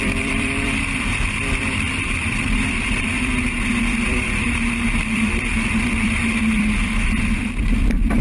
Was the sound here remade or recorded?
remade